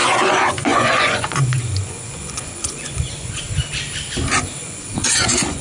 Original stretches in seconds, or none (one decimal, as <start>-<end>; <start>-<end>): 3.4-4.6